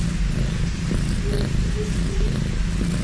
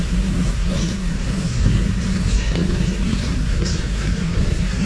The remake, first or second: second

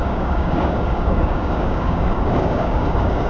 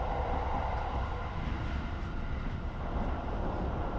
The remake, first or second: first